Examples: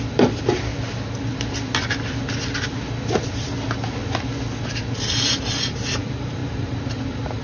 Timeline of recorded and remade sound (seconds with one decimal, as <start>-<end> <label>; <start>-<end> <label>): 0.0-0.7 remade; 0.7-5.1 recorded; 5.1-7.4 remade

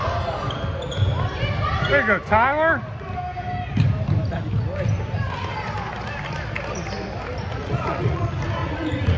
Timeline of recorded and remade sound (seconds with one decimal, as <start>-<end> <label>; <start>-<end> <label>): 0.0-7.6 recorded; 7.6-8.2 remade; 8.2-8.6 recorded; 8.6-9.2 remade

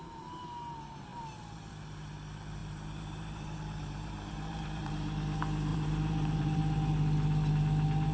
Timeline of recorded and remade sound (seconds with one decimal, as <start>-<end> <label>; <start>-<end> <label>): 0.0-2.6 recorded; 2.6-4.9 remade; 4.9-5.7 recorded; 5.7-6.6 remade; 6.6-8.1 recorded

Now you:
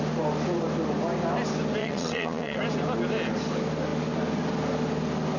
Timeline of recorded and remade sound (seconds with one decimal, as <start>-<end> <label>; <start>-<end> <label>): 0.0-1.8 recorded; 1.8-2.6 remade; 2.6-5.4 recorded

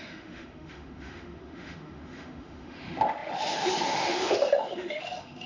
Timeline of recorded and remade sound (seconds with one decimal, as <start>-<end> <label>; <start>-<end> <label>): 0.0-5.5 remade

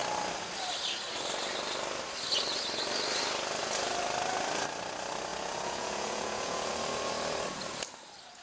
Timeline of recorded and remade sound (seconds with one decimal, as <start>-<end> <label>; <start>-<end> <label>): 0.0-5.3 recorded; 5.3-6.7 remade; 6.7-8.4 recorded